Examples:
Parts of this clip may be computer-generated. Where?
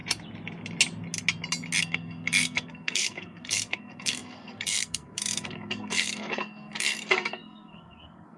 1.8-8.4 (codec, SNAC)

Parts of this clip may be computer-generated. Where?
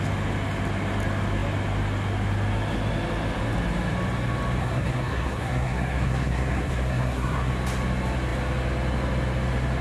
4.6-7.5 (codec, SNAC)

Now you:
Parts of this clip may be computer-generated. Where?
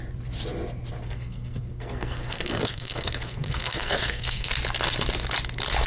1.0-4.5 (codec, SNAC)